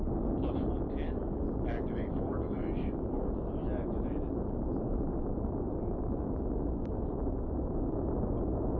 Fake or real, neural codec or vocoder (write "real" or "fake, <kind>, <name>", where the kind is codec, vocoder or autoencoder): real